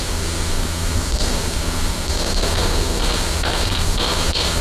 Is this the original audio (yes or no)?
no